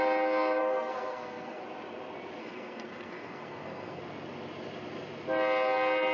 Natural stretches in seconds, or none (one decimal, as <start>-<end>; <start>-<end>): 0.0-0.6; 1.6-2.4; 4.0-6.1